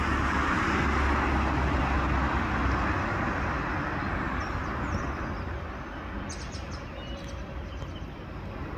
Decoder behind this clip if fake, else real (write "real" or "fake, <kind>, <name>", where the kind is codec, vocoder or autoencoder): real